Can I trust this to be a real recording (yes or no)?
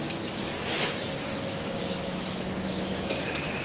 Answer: no